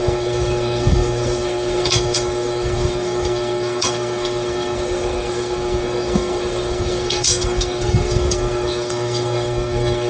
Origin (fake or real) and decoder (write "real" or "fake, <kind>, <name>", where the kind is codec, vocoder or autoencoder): fake, codec, SNAC